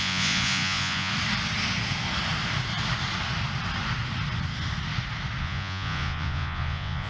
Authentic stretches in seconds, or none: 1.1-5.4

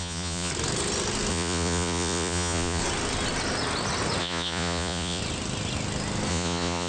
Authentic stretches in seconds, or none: 0.5-1.3; 2.8-4.2; 5.2-6.3

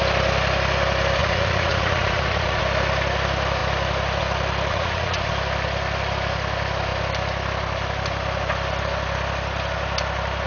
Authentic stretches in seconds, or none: 0.0-1.2; 2.6-4.7; 5.3-10.5

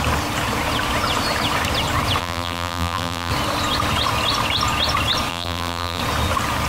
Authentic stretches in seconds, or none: 0.0-2.2; 3.3-5.3; 6.0-6.7

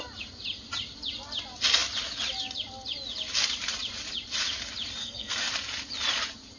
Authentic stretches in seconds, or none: 0.0-5.0; 5.5-6.6

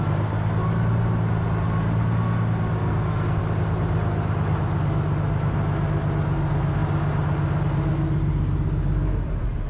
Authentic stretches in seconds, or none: 0.0-2.8; 3.4-9.7

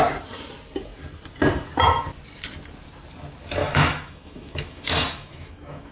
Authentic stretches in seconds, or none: 0.0-3.6